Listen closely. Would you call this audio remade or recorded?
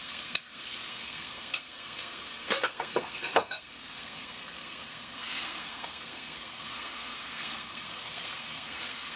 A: remade